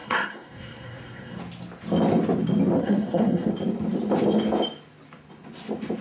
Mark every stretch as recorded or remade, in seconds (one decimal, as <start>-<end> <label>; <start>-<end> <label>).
0.0-1.4 remade; 1.4-2.8 recorded; 2.8-3.5 remade; 3.5-6.0 recorded